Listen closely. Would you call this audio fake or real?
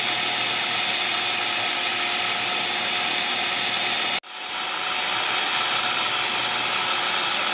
real